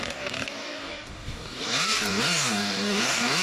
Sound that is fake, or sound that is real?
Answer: fake